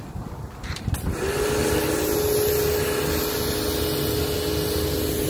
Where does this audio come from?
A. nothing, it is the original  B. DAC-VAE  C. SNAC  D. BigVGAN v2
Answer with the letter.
A